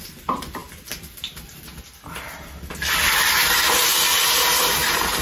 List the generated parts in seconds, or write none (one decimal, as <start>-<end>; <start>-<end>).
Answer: none

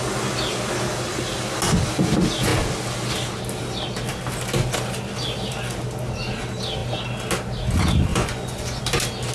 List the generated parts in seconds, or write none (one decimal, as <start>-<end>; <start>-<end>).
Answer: 8.1-8.8

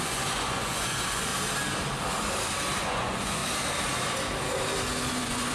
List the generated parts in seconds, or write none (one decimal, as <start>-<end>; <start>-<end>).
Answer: 0.0-1.3; 2.8-3.4; 5.1-5.5

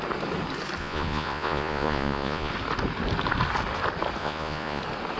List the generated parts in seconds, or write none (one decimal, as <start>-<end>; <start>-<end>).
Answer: 0.8-2.5; 4.2-4.8

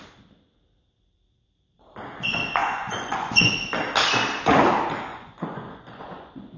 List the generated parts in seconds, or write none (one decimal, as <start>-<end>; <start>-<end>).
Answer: 2.6-3.5; 5.1-6.6

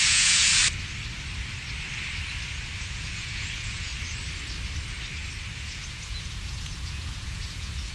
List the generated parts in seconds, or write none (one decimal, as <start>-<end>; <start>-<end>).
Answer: 0.0-0.6; 2.8-3.9; 5.6-7.9

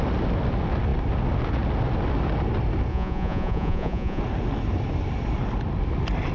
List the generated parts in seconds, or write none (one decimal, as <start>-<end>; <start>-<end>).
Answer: 2.9-4.2

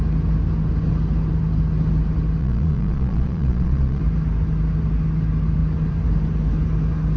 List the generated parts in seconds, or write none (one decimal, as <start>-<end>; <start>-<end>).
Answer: 2.4-4.0